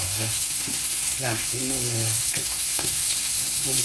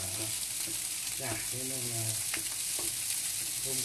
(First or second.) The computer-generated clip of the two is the first